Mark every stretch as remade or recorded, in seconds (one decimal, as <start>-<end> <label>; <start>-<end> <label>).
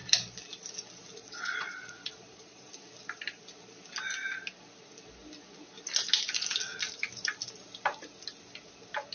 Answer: 0.0-1.2 recorded; 1.2-2.7 remade; 2.7-9.1 recorded